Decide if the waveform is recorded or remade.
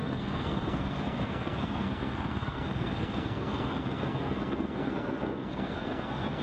remade